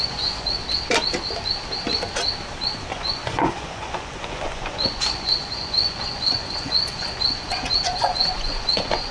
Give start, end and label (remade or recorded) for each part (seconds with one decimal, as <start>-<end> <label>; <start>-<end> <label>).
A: 0.0-0.6 remade; 0.6-2.9 recorded; 2.9-9.1 remade